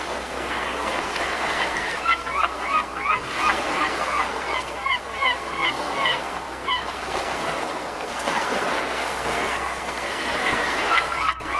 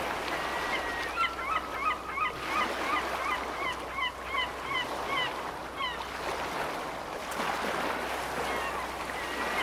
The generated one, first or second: first